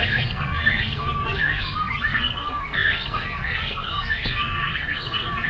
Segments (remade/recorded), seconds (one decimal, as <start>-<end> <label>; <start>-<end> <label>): 0.0-5.5 remade